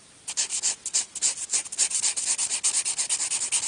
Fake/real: real